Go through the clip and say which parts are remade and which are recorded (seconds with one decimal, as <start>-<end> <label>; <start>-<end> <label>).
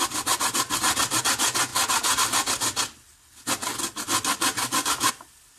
0.0-5.6 recorded